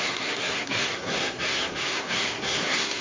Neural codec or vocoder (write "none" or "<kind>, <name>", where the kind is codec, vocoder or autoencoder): codec, SNAC